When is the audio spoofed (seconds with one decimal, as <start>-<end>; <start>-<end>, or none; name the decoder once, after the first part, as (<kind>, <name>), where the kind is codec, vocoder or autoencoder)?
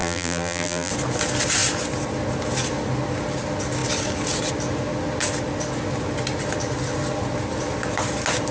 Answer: 0.0-0.9 (vocoder, BigVGAN v2)